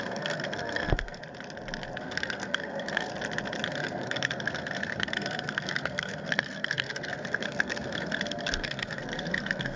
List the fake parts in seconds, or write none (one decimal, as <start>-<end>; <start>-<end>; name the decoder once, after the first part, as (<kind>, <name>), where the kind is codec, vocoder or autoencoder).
0.0-1.2 (codec, SNAC); 2.0-3.1; 3.7-9.8